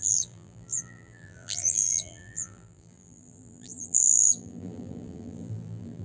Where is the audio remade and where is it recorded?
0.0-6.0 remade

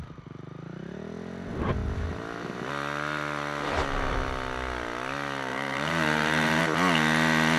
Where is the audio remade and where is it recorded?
0.0-1.8 recorded; 1.8-2.7 remade; 2.7-5.5 recorded; 5.5-6.6 remade; 6.6-7.6 recorded